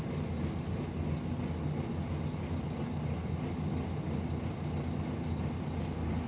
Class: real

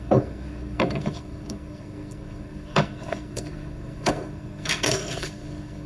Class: fake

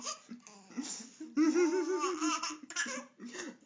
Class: real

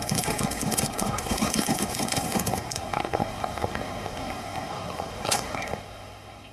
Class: fake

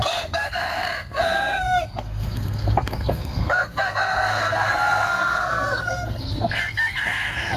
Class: fake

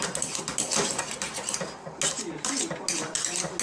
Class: real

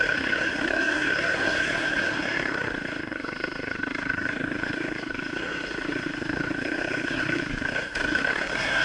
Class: fake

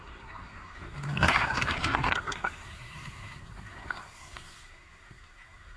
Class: fake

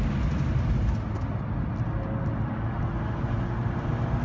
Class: real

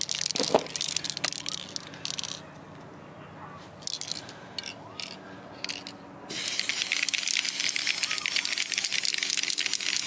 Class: real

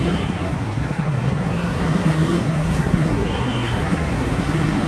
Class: fake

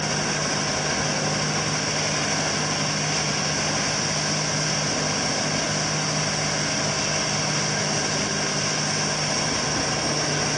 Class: real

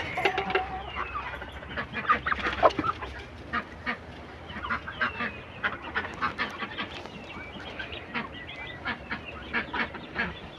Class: real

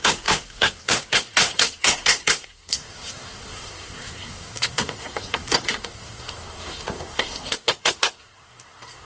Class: fake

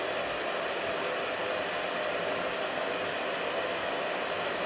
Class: real